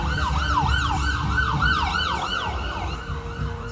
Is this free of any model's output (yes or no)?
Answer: yes